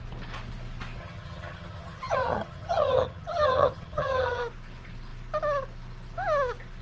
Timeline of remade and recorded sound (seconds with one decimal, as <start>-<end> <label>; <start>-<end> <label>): 0.0-1.0 recorded; 1.0-4.4 remade; 4.4-6.8 recorded